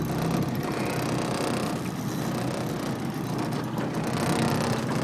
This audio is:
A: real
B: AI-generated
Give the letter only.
A